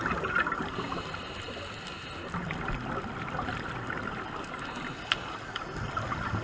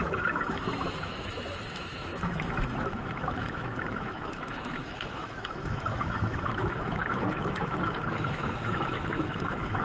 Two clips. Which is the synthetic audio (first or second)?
second